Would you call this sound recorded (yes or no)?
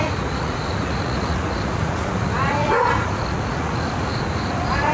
no